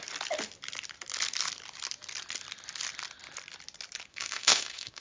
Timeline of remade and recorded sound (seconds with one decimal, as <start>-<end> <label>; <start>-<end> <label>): 0.0-4.1 recorded; 4.1-5.0 remade